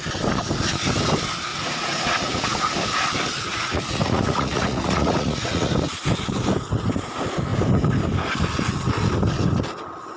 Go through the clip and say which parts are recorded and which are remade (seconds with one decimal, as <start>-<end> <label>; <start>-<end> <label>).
0.0-1.5 recorded; 1.5-2.7 remade; 2.7-3.5 recorded; 3.5-5.7 remade; 5.7-10.2 recorded